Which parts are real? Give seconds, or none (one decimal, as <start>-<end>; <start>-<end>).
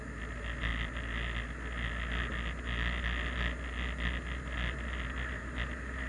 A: 0.0-6.1